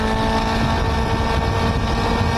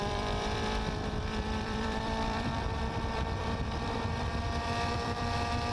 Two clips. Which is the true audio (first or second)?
first